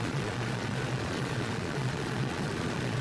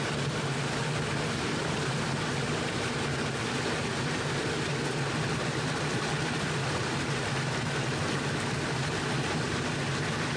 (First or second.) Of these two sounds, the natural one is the second